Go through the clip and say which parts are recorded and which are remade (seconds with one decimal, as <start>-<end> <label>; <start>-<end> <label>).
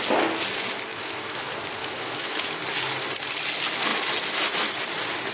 0.0-0.9 recorded; 0.9-1.4 remade; 1.4-1.8 recorded; 1.8-2.6 remade; 2.6-5.3 recorded